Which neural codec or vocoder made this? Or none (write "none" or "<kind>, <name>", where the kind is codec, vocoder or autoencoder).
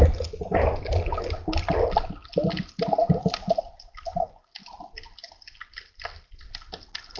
none